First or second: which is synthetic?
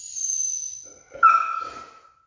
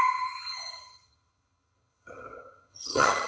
second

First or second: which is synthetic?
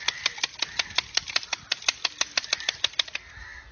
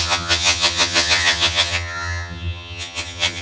second